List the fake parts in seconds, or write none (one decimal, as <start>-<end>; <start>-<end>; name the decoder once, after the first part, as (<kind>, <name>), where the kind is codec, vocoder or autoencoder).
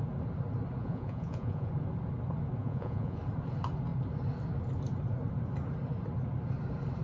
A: 0.8-1.7 (vocoder, Vocos); 2.6-3.2